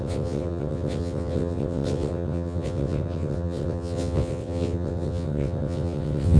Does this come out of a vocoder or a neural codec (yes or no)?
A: yes